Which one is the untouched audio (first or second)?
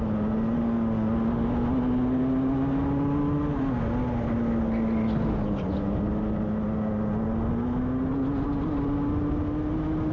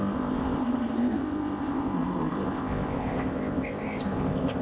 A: first